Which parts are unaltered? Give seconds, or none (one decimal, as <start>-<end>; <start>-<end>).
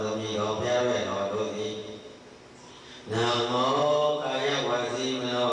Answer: 0.0-5.5